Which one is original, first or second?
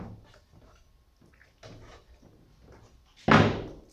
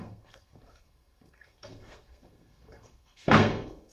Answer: first